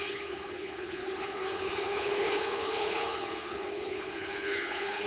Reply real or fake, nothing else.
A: fake